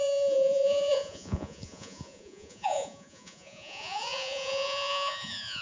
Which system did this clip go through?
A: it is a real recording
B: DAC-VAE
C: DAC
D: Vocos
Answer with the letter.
D